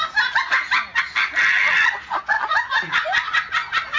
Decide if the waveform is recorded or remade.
recorded